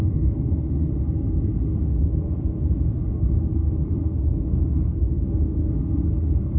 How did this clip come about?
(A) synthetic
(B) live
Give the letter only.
A